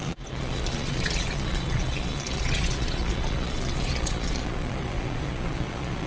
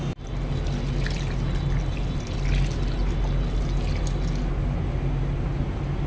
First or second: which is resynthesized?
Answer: first